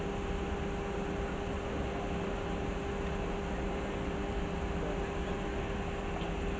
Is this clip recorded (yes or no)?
yes